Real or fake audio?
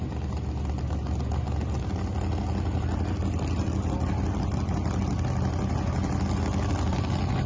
real